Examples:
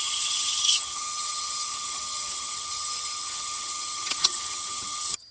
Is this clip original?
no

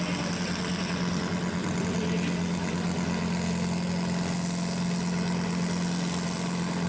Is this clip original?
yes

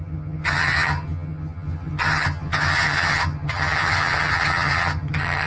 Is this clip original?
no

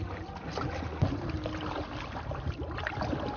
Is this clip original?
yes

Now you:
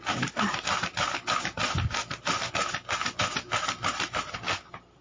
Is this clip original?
yes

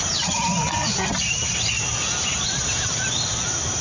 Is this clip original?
yes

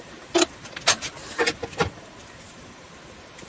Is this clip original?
yes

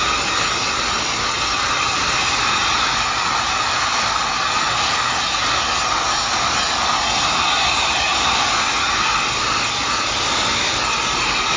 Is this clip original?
yes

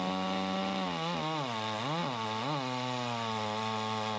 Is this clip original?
yes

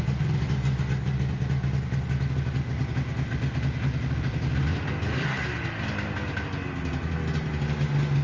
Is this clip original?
yes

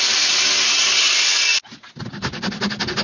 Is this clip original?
yes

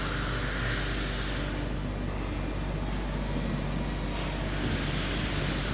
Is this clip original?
yes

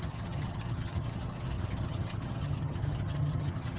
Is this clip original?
no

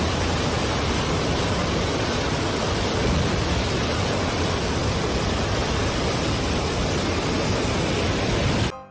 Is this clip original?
yes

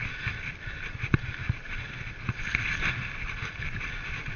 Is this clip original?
yes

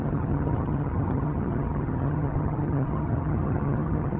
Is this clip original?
no